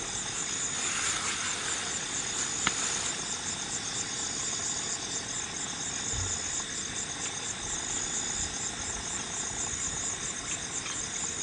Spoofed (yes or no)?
no